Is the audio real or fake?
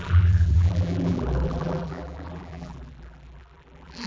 fake